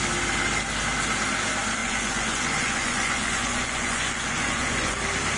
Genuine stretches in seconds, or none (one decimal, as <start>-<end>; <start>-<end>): 0.0-1.8; 5.0-5.4